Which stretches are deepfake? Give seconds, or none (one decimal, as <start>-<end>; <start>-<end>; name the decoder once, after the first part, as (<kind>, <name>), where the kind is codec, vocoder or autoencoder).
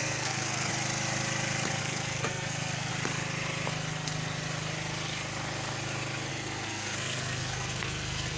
0.0-0.7 (codec, SNAC); 1.8-2.9; 6.3-8.4